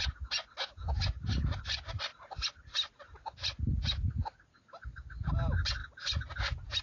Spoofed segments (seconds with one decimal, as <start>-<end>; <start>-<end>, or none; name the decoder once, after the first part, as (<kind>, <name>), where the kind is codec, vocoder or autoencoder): none